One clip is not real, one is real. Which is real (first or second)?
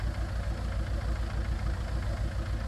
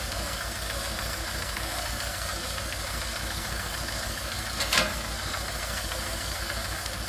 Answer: first